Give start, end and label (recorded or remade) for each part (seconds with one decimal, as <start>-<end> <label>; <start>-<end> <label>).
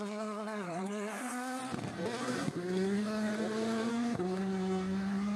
0.0-1.6 remade; 1.6-2.2 recorded; 2.2-3.3 remade; 3.3-3.9 recorded; 3.9-5.4 remade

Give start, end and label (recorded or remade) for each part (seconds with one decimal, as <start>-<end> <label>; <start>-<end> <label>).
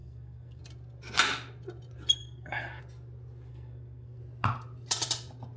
0.0-0.6 remade; 0.6-2.2 recorded; 2.2-2.8 remade; 2.8-3.5 recorded; 3.5-4.2 remade; 4.2-5.6 recorded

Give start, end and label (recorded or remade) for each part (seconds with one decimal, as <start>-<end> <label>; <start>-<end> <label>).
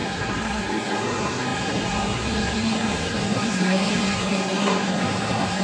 0.0-5.6 remade